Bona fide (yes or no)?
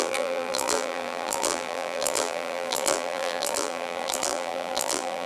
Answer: no